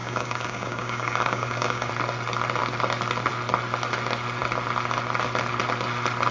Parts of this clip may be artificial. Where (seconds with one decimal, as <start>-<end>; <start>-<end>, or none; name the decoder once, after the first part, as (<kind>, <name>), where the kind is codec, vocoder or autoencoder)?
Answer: 0.0-1.9 (codec, DAC)